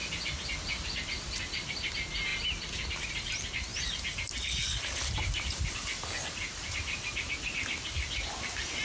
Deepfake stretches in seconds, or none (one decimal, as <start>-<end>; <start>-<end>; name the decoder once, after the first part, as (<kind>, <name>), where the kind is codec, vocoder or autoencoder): none